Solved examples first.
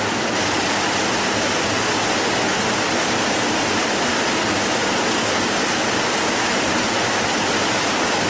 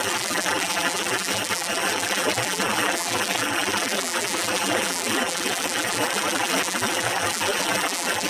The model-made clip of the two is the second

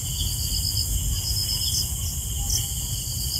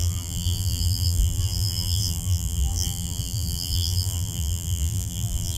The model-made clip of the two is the second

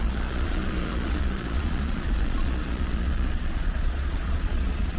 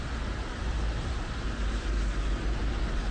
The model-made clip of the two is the first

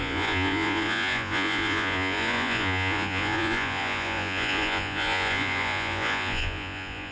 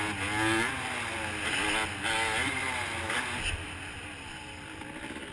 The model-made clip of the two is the first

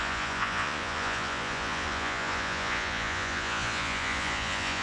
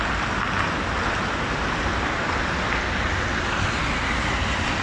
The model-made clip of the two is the first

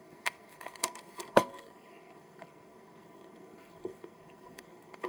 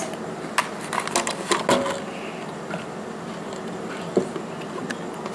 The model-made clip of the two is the first